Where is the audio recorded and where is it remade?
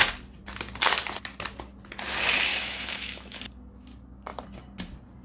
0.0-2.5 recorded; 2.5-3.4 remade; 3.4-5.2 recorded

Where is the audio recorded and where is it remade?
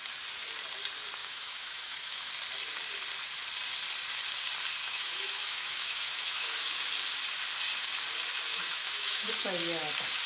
0.0-1.2 recorded; 1.2-2.3 remade; 2.3-4.8 recorded; 4.8-6.7 remade; 6.7-8.5 recorded; 8.5-9.3 remade; 9.3-10.3 recorded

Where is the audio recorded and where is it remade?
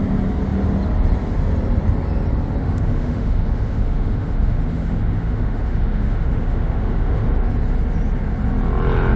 0.0-2.6 recorded; 2.6-7.5 remade; 7.5-9.2 recorded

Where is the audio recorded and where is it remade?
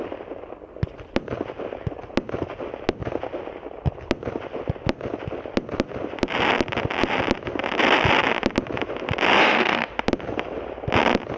0.0-9.4 recorded; 9.4-9.9 remade; 9.9-11.4 recorded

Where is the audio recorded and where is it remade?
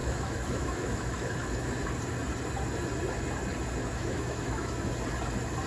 0.0-1.8 remade; 1.8-3.8 recorded; 3.8-4.9 remade; 4.9-5.7 recorded